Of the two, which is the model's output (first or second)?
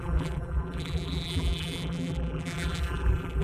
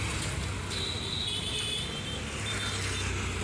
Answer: first